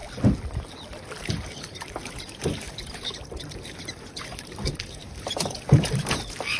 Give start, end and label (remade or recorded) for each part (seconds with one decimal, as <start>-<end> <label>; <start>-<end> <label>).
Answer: 0.0-1.2 recorded; 1.2-6.6 remade